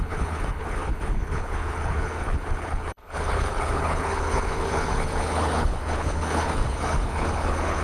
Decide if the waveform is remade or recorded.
remade